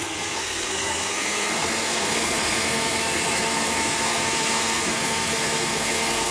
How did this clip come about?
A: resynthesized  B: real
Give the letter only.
A